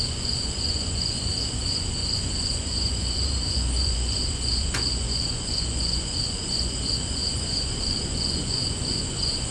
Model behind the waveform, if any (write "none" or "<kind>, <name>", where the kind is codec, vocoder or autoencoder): vocoder, Vocos